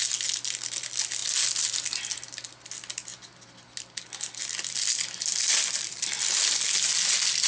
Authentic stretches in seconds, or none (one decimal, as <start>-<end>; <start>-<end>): 0.0-7.5

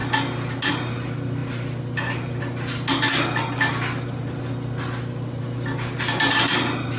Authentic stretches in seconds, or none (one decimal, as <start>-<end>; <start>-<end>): 0.0-7.0

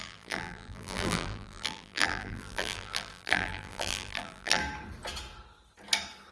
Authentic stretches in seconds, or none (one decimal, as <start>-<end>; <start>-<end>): 4.6-6.3